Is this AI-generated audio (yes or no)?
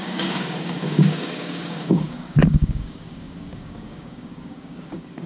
yes